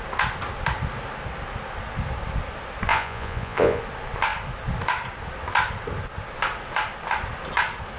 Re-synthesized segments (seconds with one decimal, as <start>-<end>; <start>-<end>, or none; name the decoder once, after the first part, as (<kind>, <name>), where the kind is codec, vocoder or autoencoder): 2.9-3.8 (vocoder, Vocos)